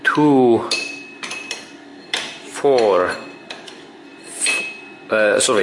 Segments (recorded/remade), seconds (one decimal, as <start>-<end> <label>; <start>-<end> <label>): 0.0-5.6 recorded